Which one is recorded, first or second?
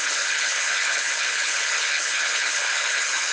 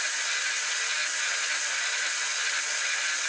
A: second